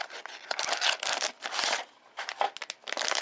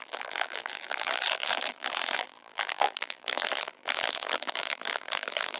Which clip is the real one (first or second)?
first